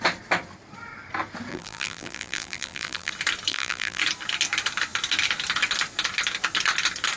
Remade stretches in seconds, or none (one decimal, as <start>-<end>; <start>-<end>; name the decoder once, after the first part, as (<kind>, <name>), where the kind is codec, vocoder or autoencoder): 1.5-3.1 (vocoder, BigVGAN v2); 3.5-4.0

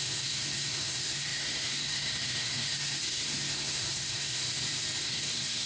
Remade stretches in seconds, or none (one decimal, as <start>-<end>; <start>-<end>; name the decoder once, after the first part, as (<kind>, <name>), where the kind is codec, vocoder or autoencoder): 0.0-4.4 (codec, SNAC); 5.0-5.7

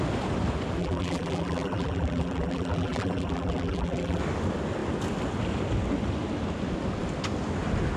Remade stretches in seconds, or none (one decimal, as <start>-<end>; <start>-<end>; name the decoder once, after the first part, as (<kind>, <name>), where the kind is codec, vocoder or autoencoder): 0.8-4.2 (vocoder, BigVGAN v2)

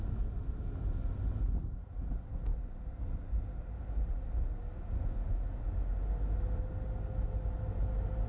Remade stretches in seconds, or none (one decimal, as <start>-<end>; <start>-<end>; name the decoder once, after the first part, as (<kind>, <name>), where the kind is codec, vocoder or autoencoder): none